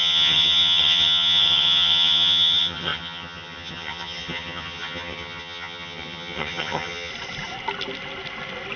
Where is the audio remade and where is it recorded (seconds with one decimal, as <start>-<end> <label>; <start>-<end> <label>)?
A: 0.0-7.1 remade; 7.1-8.8 recorded